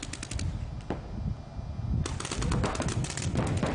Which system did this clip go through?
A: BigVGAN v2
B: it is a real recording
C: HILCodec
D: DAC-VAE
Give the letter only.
B